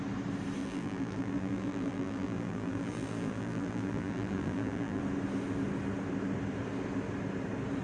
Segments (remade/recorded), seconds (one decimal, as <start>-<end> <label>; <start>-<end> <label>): 0.0-0.6 recorded; 0.6-5.0 remade; 5.0-7.8 recorded